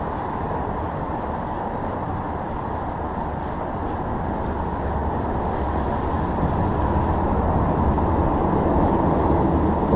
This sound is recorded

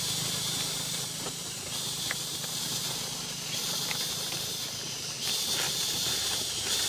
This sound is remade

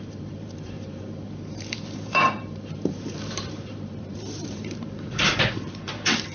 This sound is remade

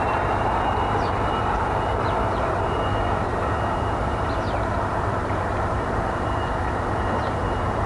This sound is remade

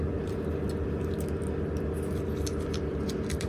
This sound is remade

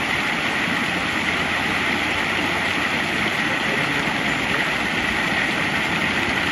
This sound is remade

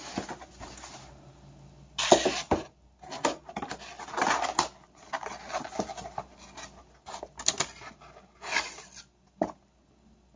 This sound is recorded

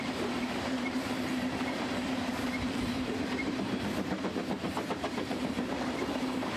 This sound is remade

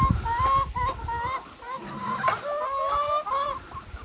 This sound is recorded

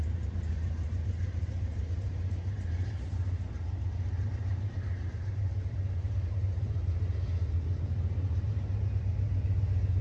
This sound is remade